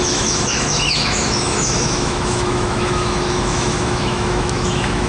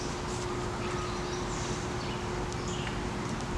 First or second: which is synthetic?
first